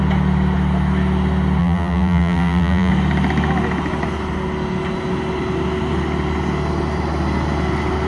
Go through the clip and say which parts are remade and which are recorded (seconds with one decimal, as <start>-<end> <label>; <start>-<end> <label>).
0.0-1.6 recorded; 1.6-2.9 remade; 2.9-8.1 recorded